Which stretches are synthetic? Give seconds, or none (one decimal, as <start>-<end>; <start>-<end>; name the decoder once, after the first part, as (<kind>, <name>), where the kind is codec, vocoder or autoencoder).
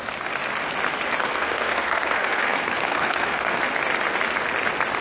1.2-3.6 (codec, SNAC)